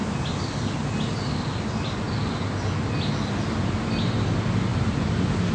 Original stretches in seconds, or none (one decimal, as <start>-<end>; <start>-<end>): 0.0-5.5